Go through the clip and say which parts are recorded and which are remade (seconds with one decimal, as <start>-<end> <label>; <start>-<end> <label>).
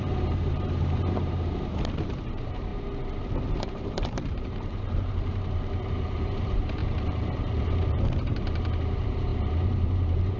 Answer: 0.0-2.7 remade; 2.7-3.5 recorded; 3.5-6.8 remade; 6.8-7.6 recorded; 7.6-10.4 remade